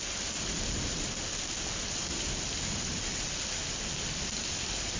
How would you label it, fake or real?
real